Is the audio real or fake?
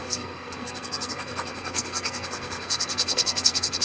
fake